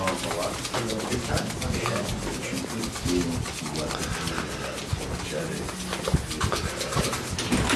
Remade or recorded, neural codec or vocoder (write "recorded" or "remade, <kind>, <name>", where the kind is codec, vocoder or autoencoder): recorded